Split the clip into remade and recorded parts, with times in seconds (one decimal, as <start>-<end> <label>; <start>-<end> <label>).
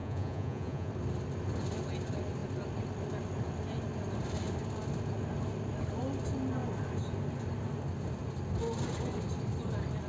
0.0-0.9 remade; 0.9-10.1 recorded